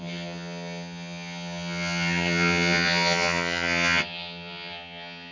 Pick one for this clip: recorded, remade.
remade